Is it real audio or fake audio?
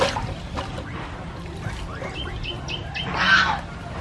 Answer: real